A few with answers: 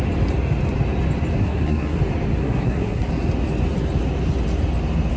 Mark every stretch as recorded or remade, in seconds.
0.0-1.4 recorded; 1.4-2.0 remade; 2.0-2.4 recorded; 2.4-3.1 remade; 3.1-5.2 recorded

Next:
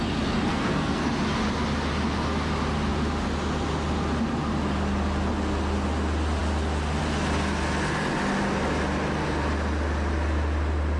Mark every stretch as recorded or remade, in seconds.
0.0-0.5 recorded; 0.5-1.1 remade; 1.1-11.0 recorded

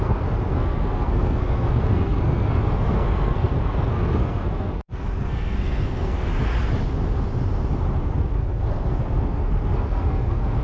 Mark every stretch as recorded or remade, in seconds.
0.0-6.3 remade; 6.3-8.2 recorded; 8.2-10.6 remade

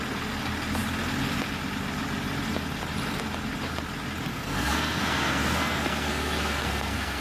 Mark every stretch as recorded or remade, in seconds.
0.0-4.3 recorded; 4.3-7.2 remade

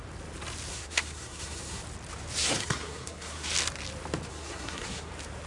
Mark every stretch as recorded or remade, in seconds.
0.0-0.7 recorded; 0.7-1.8 remade; 1.8-2.4 recorded; 2.4-3.5 remade; 3.5-4.3 recorded; 4.3-5.1 remade; 5.1-5.5 recorded

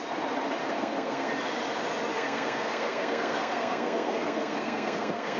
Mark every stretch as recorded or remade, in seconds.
0.0-0.6 recorded; 0.6-1.3 remade; 1.3-2.1 recorded; 2.1-5.4 remade